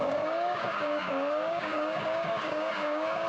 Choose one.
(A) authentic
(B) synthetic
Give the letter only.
B